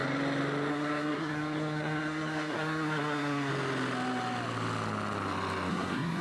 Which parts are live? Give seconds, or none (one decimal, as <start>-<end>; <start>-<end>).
0.0-0.7; 3.5-5.7